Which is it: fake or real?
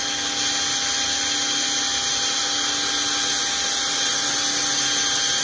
real